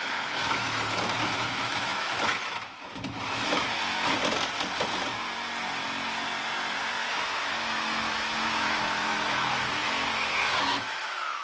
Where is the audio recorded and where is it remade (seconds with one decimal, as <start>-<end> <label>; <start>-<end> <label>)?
0.0-3.8 remade; 3.8-7.1 recorded; 7.1-11.4 remade